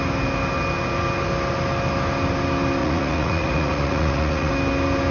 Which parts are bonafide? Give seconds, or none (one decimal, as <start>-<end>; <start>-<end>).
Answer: 0.0-2.8; 4.5-5.1